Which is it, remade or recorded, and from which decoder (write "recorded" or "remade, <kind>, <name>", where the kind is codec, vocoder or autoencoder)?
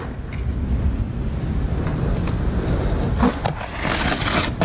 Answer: recorded